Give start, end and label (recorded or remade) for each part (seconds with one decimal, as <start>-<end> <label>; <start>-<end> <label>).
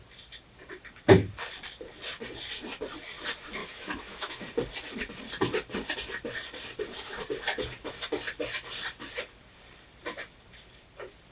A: 0.0-3.6 recorded; 3.6-4.4 remade; 4.4-11.3 recorded